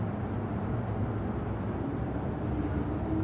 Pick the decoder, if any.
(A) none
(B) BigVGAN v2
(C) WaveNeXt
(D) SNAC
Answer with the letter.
A